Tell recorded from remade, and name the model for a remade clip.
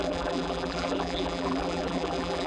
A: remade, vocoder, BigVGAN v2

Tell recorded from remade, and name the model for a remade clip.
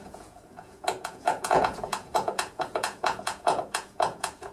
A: remade, vocoder, Vocos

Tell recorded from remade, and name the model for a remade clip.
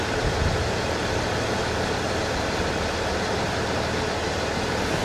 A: recorded